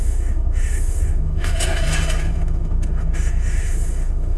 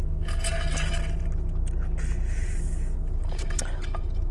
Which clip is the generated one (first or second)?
first